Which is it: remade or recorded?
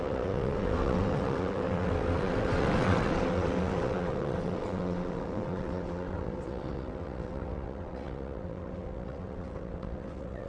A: remade